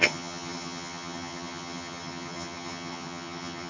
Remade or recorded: remade